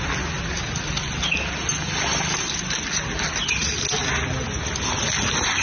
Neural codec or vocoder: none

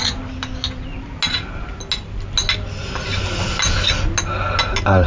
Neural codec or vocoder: none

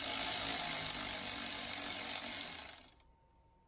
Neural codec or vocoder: none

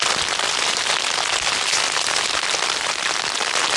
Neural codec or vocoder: none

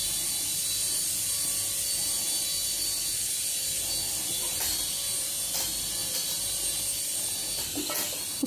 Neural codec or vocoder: none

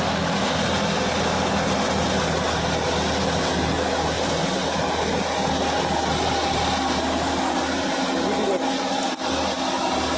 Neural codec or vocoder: none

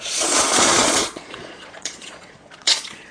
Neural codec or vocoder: vocoder, Vocos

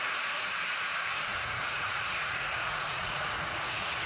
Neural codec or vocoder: vocoder, Vocos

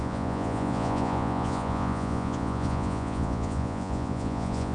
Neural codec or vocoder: vocoder, Vocos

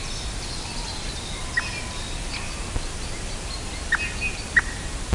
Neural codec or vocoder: none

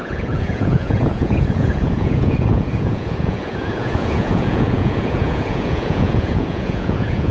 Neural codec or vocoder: vocoder, Vocos